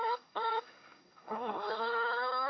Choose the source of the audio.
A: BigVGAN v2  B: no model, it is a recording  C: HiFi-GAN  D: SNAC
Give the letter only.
D